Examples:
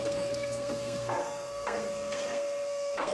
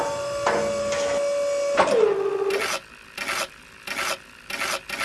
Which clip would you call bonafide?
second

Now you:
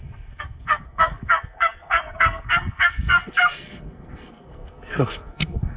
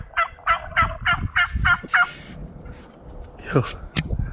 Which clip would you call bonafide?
second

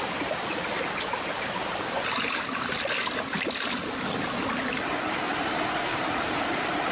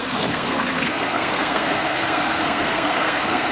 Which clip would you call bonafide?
first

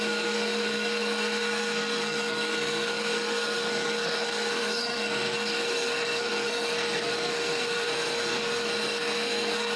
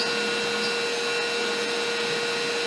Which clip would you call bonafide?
second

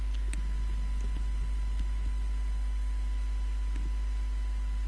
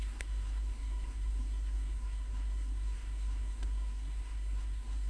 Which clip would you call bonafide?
first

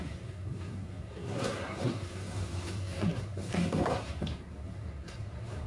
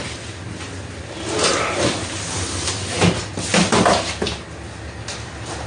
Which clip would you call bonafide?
second